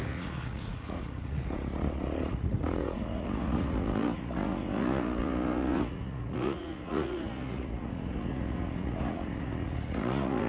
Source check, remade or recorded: remade